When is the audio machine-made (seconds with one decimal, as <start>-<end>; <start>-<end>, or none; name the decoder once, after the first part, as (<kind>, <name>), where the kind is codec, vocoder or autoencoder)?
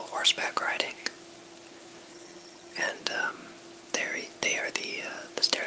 2.1-2.9 (vocoder, HiFi-GAN)